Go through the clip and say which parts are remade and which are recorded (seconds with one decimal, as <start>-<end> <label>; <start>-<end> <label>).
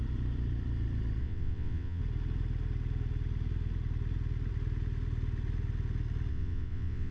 0.0-1.2 recorded; 1.2-2.0 remade; 2.0-6.3 recorded; 6.3-7.1 remade